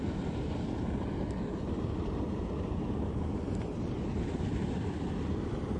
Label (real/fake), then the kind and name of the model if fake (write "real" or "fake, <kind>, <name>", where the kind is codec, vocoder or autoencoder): real